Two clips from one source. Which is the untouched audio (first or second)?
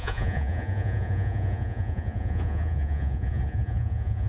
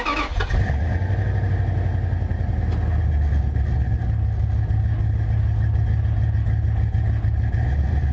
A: second